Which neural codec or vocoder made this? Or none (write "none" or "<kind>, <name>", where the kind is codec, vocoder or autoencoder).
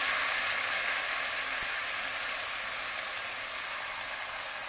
none